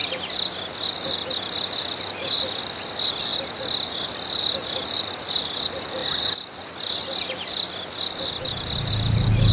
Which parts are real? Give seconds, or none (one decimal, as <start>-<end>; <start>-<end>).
0.0-9.5